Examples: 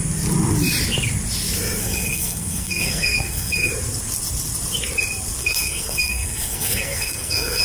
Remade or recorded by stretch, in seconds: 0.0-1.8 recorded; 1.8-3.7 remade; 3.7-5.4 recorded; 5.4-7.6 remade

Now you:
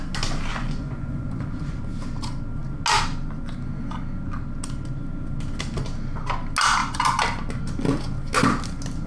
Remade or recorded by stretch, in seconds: 0.0-0.5 recorded; 0.5-1.8 remade; 1.8-9.1 recorded

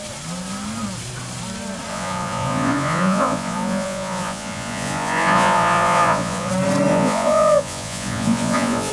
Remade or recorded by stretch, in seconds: 0.0-1.9 recorded; 1.9-6.5 remade; 6.5-6.9 recorded; 6.9-8.9 remade

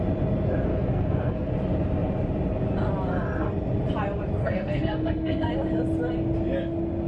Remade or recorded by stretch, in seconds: 0.0-0.7 recorded; 0.7-1.5 remade; 1.5-4.4 recorded; 4.4-5.5 remade; 5.5-7.1 recorded

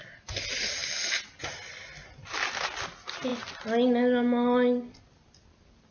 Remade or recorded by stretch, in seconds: 0.0-5.9 recorded

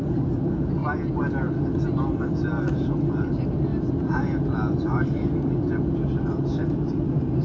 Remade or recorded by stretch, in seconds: 0.0-7.4 recorded

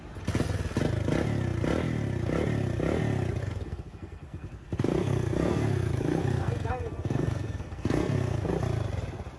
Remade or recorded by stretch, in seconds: 0.0-3.4 recorded; 3.4-8.5 remade; 8.5-9.4 recorded